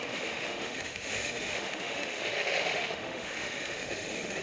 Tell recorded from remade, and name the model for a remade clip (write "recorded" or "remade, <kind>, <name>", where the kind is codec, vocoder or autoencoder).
remade, autoencoder, DAC-VAE